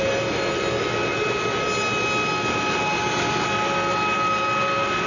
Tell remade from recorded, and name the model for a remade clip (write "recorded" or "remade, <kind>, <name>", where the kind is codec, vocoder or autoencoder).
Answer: recorded